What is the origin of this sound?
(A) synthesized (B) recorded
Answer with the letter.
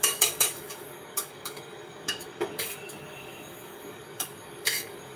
A